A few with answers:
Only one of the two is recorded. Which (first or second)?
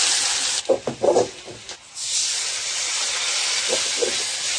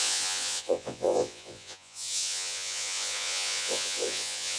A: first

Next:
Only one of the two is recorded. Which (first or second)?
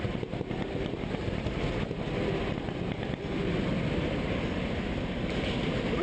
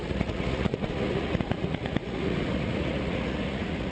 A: first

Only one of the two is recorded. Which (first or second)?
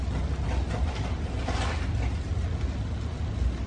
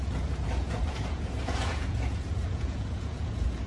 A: first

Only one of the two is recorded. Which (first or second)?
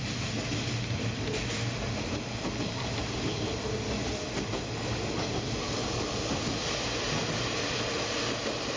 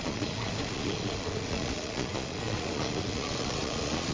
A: first